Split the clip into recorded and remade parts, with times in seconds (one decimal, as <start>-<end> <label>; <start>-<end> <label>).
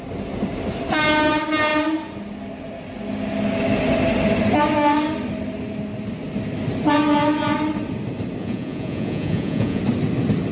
0.0-8.4 recorded; 8.4-9.8 remade; 9.8-10.5 recorded